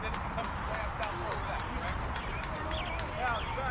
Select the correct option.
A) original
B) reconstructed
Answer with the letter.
A